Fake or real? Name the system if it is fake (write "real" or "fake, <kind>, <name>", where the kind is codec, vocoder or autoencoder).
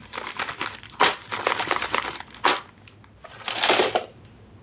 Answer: real